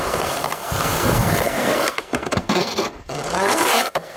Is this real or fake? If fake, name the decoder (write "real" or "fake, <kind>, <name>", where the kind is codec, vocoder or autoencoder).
fake, codec, SNAC